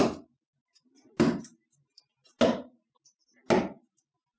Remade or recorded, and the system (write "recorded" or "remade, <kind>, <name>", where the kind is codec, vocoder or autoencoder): recorded